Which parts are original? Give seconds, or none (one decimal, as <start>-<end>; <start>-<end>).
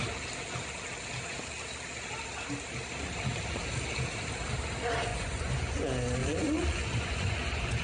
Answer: 0.0-5.1; 5.8-6.2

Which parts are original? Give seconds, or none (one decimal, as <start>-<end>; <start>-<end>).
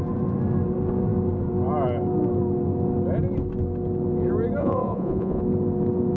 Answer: 0.0-4.6; 5.4-6.2